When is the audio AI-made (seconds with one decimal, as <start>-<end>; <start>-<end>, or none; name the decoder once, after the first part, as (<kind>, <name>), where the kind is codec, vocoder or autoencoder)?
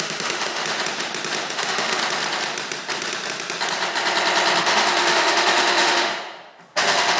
0.0-0.6 (autoencoder, DAC-VAE); 1.5-2.0; 4.6-6.1; 6.7-7.2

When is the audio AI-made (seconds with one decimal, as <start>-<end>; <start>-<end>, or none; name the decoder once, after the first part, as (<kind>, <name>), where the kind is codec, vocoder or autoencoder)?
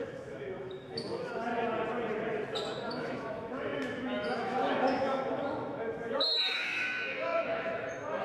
0.0-1.5 (autoencoder, DAC-VAE); 2.9-8.2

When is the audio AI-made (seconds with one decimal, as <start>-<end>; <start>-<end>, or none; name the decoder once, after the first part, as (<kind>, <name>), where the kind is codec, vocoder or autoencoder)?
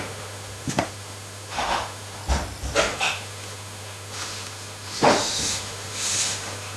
0.0-2.2 (autoencoder, DAC-VAE); 2.8-6.8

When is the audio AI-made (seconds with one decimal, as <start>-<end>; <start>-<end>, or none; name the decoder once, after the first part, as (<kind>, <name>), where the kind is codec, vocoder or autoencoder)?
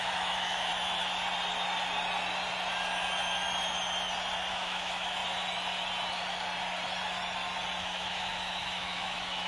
0.0-0.7 (autoencoder, DAC-VAE); 4.5-5.2; 7.8-9.5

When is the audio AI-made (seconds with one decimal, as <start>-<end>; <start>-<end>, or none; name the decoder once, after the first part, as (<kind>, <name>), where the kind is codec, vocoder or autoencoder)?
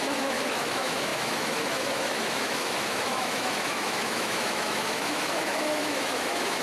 0.0-6.6 (autoencoder, DAC-VAE)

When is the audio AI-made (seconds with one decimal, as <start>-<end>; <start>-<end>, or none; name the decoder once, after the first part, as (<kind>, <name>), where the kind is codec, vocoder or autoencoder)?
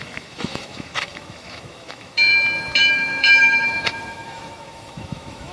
0.0-2.3 (autoencoder, DAC-VAE); 2.9-5.5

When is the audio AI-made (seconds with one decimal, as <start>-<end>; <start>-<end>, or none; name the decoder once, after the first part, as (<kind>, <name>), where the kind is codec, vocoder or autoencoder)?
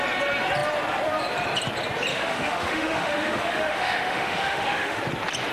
2.1-5.0 (autoencoder, DAC-VAE)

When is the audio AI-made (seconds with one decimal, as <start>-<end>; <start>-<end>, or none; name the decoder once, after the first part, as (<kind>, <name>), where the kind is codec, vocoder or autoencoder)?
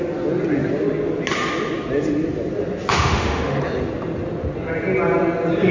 2.9-3.6 (autoencoder, DAC-VAE)